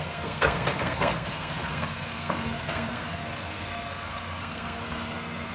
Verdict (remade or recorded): remade